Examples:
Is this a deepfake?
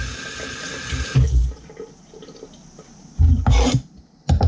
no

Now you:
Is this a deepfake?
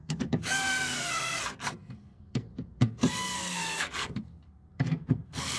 yes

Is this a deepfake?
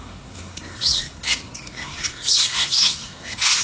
yes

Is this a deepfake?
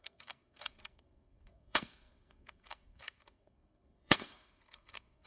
yes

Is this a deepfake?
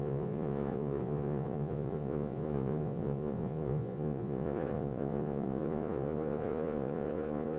yes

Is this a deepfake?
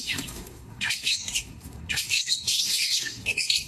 yes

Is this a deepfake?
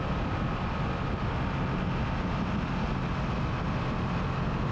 no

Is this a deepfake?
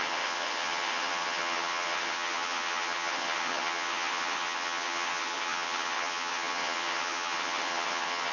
yes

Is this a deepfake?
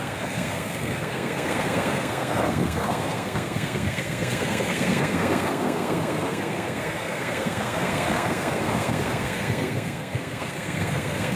yes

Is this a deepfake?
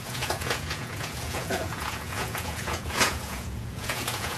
yes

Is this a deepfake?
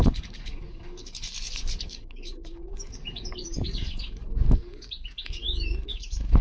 yes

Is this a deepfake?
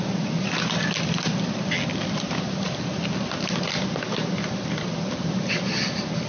no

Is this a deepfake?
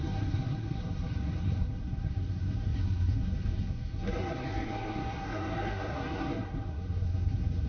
yes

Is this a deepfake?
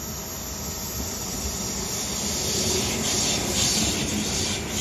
no